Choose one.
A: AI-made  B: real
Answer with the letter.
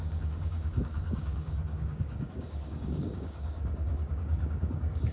A